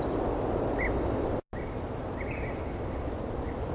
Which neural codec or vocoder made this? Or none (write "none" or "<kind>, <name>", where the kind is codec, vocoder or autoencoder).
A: none